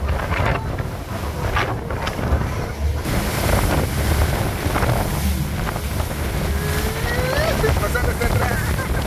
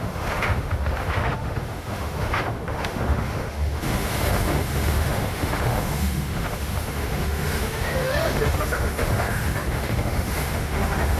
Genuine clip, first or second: first